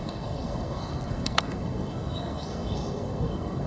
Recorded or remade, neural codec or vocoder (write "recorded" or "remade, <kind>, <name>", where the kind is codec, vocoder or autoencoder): remade, codec, SNAC